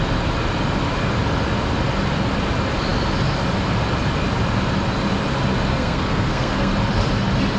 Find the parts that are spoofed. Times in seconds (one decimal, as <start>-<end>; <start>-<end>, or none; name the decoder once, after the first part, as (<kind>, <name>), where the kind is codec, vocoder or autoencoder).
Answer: 5.7-6.7 (codec, SNAC)